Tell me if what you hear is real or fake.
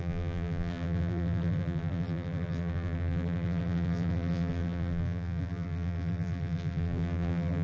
fake